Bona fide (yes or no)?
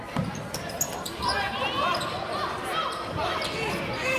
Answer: yes